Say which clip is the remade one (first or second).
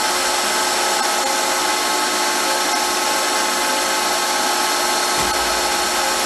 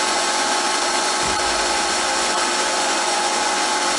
second